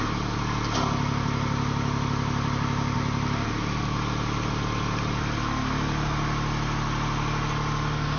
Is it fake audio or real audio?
real